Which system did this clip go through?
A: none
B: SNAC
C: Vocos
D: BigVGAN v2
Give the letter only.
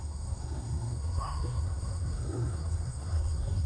B